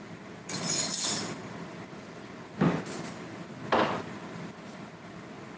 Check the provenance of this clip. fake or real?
real